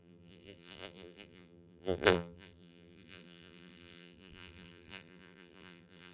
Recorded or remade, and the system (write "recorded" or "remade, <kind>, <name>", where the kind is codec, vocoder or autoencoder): remade, vocoder, BigVGAN v2